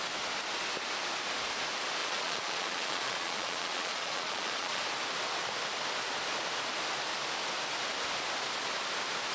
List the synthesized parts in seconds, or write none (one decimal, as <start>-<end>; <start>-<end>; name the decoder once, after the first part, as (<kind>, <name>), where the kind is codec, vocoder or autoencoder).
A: 2.0-4.8 (vocoder, Vocos)